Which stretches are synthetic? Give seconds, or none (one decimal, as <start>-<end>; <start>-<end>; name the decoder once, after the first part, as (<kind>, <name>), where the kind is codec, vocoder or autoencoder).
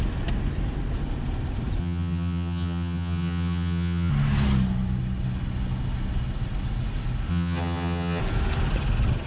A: 1.8-4.1 (vocoder, HiFi-GAN); 7.3-8.2